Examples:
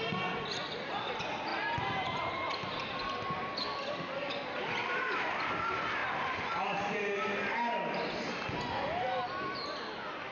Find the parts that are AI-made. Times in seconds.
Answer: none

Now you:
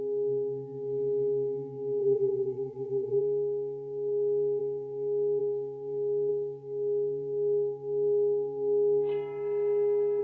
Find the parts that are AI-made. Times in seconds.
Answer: 2.0-3.2

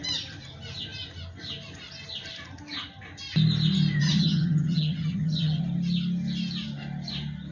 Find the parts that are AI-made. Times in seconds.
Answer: 4.0-5.6

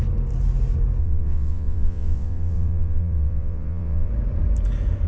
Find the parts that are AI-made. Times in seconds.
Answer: 1.0-4.1

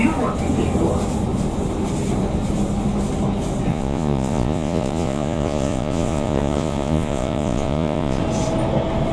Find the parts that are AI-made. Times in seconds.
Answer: 3.7-8.2

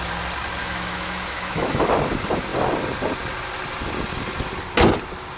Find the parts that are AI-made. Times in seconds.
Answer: 0.6-1.9

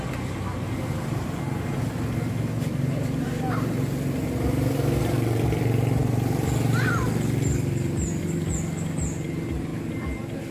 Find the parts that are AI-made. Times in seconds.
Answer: none